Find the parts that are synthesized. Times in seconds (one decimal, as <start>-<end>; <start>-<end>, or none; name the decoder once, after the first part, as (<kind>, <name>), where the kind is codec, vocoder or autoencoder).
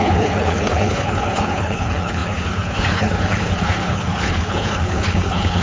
0.0-5.6 (codec, HILCodec)